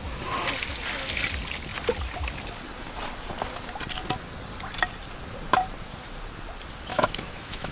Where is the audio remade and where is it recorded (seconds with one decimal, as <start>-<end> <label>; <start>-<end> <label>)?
0.0-6.9 recorded; 6.9-7.7 remade